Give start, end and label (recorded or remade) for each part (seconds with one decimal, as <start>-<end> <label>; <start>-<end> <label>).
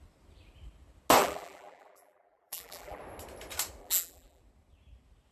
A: 0.0-1.2 recorded; 1.2-3.0 remade; 3.0-3.8 recorded; 3.8-4.4 remade; 4.4-5.3 recorded